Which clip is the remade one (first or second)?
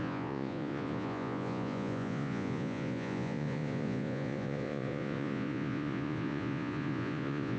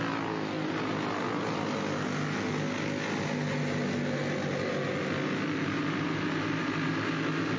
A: first